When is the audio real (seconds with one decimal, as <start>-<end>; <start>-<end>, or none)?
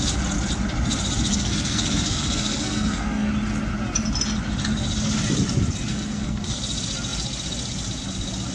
0.0-1.3; 3.3-5.9; 6.6-8.5